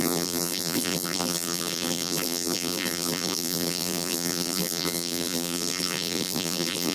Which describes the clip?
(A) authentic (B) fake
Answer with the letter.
B